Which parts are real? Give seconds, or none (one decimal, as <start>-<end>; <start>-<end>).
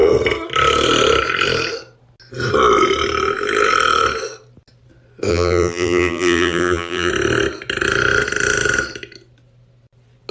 0.0-5.3; 7.1-10.3